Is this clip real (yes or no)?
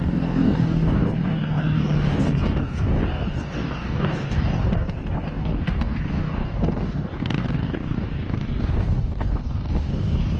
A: no